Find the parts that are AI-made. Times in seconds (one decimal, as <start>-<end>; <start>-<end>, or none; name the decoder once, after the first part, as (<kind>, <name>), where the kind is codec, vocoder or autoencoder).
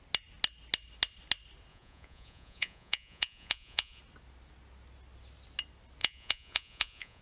1.7-4.0 (vocoder, Vocos); 6.0-7.2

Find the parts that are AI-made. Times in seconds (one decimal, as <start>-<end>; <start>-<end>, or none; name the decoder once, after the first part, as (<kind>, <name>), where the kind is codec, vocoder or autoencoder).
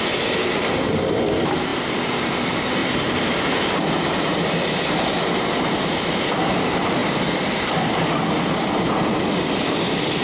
0.0-1.7 (vocoder, BigVGAN v2); 2.4-7.0; 8.3-10.2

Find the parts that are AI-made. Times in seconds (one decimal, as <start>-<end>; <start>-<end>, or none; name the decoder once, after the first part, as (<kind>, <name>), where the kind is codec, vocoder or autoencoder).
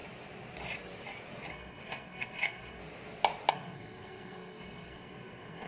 1.5-2.8 (codec, SNAC); 3.5-5.7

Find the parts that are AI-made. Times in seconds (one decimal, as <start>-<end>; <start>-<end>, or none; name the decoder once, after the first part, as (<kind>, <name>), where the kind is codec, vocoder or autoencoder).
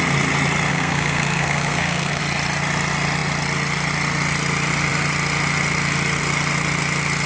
0.7-2.2 (codec, SNAC)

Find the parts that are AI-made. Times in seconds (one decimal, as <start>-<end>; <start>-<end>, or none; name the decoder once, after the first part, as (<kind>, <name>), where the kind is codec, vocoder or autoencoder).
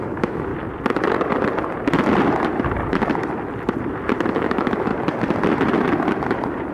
0.0-0.5 (autoencoder, DAC-VAE); 4.3-4.9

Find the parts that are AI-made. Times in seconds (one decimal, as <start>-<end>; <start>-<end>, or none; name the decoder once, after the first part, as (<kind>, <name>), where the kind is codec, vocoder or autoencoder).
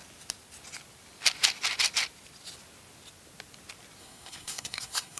4.0-5.2 (codec, SNAC)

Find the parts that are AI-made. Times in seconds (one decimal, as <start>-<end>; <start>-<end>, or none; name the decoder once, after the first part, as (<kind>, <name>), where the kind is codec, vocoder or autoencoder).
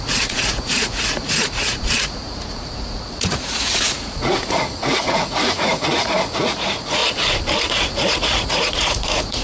0.0-7.0 (vocoder, Vocos); 7.7-9.4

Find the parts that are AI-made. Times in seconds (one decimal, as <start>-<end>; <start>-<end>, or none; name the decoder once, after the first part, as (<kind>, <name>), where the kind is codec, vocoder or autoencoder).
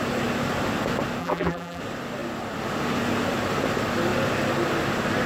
1.2-1.8 (vocoder, BigVGAN v2)